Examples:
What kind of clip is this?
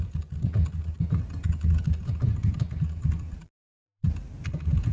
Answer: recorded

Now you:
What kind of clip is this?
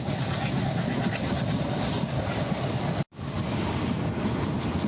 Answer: recorded